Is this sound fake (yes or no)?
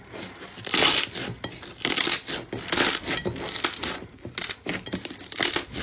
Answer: no